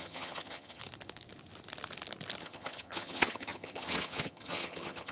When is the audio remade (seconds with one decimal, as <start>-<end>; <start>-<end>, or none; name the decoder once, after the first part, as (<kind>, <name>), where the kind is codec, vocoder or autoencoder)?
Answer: 0.0-0.8 (vocoder, HiFi-GAN); 2.4-5.1

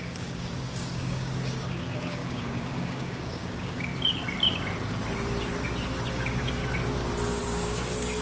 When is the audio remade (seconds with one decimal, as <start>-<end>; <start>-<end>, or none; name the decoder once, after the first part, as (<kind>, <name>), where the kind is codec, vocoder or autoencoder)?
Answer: 0.0-3.9 (codec, DAC); 6.1-6.6; 7.4-8.2